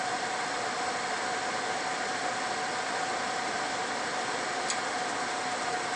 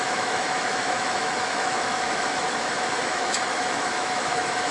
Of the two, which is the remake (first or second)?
second